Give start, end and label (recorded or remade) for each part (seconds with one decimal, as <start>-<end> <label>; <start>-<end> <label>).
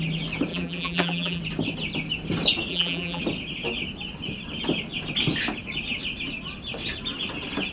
0.0-0.5 recorded; 0.5-1.4 remade; 1.4-2.7 recorded; 2.7-3.2 remade; 3.2-7.7 recorded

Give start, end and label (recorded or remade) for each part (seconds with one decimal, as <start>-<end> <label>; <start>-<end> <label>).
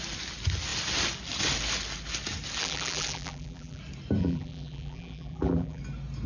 0.0-2.6 recorded; 2.6-3.8 remade; 3.8-4.2 recorded; 4.2-5.8 remade; 5.8-6.3 recorded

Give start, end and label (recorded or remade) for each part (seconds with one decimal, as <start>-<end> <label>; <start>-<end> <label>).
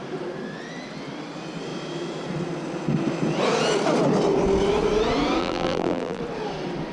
0.0-5.4 recorded; 5.4-6.2 remade; 6.2-6.9 recorded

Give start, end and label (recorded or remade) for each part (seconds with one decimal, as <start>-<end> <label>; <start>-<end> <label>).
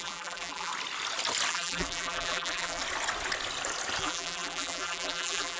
0.0-0.7 remade; 0.7-1.5 recorded; 1.5-2.8 remade; 2.8-4.0 recorded; 4.0-5.6 remade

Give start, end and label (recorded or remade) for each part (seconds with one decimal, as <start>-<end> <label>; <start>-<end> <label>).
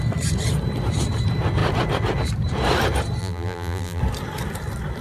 0.0-3.2 recorded; 3.2-4.0 remade; 4.0-5.0 recorded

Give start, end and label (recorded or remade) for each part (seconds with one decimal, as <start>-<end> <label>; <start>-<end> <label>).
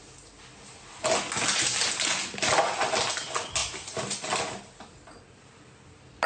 0.0-6.3 recorded